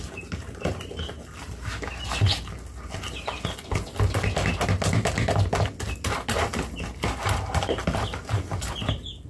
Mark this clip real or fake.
real